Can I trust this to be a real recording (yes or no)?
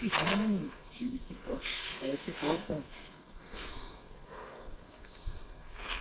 no